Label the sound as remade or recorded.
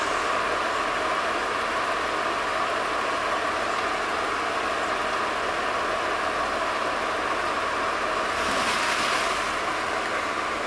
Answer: recorded